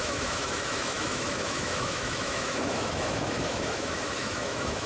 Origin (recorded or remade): remade